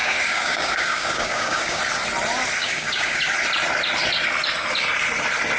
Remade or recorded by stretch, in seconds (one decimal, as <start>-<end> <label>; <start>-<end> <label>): 0.0-1.8 remade; 1.8-2.6 recorded; 2.6-3.2 remade; 3.2-5.6 recorded